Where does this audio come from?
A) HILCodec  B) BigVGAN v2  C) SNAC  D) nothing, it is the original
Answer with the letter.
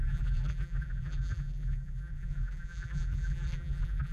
B